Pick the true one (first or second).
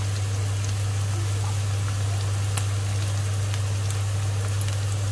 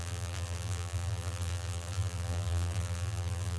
first